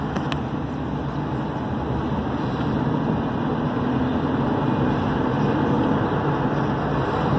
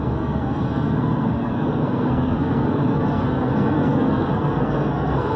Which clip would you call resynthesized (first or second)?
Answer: second